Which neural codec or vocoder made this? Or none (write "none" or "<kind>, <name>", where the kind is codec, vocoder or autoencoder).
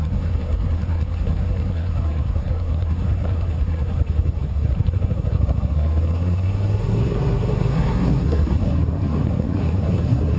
codec, SNAC